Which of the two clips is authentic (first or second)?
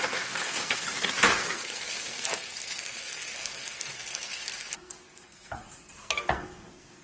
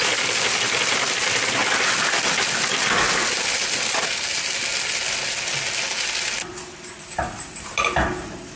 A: second